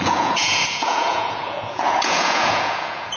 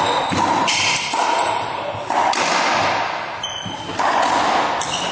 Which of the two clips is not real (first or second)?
first